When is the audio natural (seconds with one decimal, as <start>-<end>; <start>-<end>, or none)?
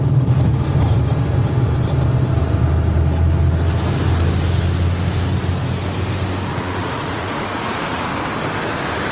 0.0-6.5; 8.1-9.1